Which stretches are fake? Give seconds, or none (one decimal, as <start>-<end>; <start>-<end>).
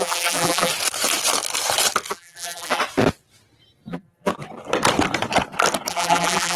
0.0-0.7; 2.1-2.8; 3.9-4.3; 5.9-6.6